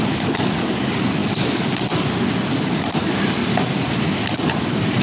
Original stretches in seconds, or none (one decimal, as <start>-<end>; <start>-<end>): 0.0-5.0